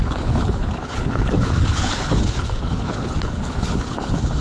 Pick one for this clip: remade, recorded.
remade